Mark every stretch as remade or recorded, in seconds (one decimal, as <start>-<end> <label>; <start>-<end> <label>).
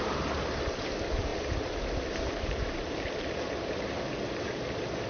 0.0-5.1 remade